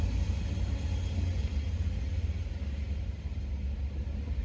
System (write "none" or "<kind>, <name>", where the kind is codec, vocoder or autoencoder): none